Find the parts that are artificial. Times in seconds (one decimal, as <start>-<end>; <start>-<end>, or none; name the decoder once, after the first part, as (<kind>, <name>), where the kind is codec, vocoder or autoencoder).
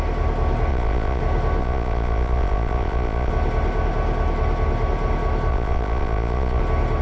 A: 0.7-1.2 (vocoder, Vocos); 1.6-3.3; 5.5-6.6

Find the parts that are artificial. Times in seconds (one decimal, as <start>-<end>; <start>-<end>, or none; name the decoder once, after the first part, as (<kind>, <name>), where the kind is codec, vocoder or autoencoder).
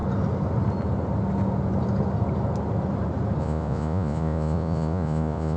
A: 3.4-5.6 (vocoder, Vocos)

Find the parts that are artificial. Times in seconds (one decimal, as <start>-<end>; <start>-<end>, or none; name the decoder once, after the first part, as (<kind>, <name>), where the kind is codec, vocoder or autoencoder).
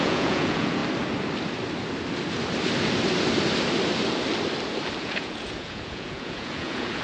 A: 0.0-0.8 (vocoder, Vocos); 5.0-7.0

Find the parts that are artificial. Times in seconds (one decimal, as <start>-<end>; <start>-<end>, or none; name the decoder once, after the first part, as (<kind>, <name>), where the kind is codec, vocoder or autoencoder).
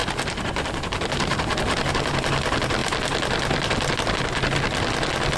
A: none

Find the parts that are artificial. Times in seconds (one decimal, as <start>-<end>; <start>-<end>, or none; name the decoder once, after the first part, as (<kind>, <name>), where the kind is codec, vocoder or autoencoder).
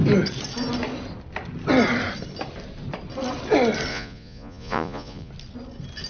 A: 3.9-5.3 (vocoder, Vocos)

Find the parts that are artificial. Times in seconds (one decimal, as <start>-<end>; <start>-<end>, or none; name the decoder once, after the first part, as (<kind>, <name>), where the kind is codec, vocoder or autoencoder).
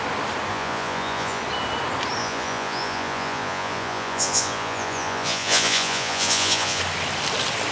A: 0.5-1.4 (vocoder, Vocos); 2.2-6.8